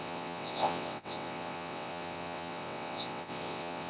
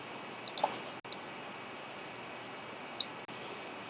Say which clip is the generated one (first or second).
first